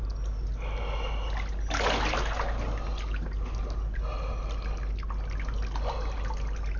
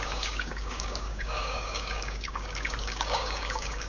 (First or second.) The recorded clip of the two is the first